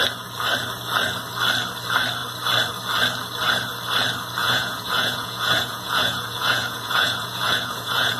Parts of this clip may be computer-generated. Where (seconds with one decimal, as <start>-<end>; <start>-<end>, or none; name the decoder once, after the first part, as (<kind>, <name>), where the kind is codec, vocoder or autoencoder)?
4.4-8.2 (vocoder, Vocos)